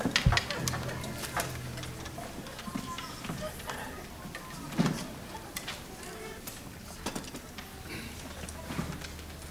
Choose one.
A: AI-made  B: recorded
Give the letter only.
B